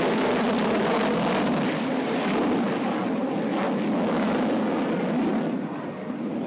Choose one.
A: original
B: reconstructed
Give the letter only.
A